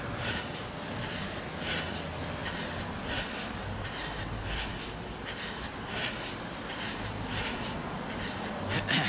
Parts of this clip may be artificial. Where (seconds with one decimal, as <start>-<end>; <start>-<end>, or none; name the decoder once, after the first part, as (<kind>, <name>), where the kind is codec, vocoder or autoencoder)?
none